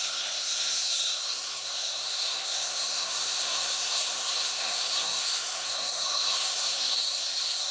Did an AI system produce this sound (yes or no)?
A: yes